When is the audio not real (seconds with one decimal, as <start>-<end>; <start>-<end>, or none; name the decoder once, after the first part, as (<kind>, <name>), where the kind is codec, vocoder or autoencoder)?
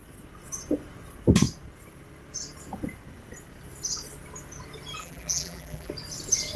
5.0-5.9 (vocoder, BigVGAN v2)